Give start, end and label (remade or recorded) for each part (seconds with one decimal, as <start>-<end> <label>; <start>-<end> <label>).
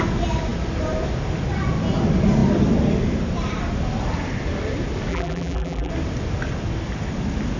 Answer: 0.0-5.1 recorded; 5.1-5.9 remade; 5.9-7.6 recorded